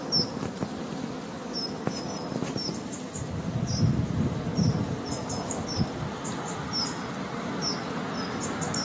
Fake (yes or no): no